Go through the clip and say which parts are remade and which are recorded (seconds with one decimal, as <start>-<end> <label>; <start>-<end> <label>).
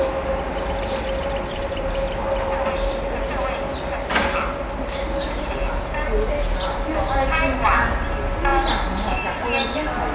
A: 0.0-10.1 recorded